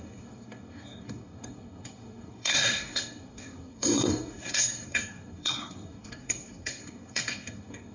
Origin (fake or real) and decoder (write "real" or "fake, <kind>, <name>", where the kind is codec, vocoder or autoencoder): fake, codec, SNAC